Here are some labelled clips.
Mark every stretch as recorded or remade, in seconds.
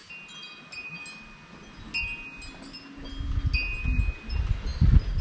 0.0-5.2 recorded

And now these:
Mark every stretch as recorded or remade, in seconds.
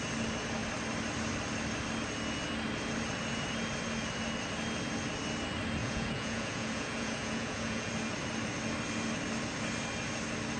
0.0-5.8 recorded; 5.8-7.9 remade; 7.9-10.6 recorded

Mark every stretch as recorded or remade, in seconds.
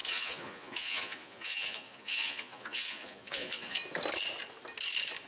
0.0-3.8 remade; 3.8-5.3 recorded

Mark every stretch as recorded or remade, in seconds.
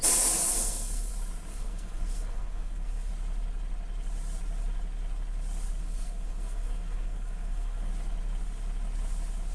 0.0-0.4 recorded; 0.4-1.1 remade; 1.1-1.5 recorded; 1.5-3.1 remade; 3.1-5.8 recorded; 5.8-7.9 remade; 7.9-9.5 recorded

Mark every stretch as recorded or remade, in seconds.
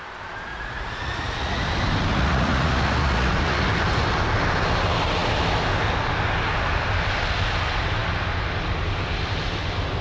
0.0-0.5 recorded; 0.5-1.6 remade; 1.6-2.1 recorded; 2.1-3.7 remade; 3.7-10.0 recorded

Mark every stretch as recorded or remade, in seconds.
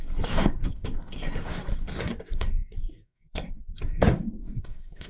0.0-5.1 remade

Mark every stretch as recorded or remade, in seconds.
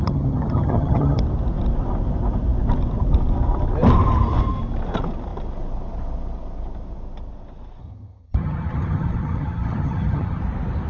0.0-1.2 remade; 1.2-7.8 recorded; 7.8-10.4 remade; 10.4-10.9 recorded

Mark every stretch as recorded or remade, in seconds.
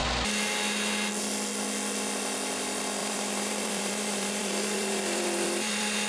0.0-3.0 recorded; 3.0-6.1 remade